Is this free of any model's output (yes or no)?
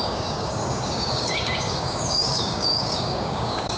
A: no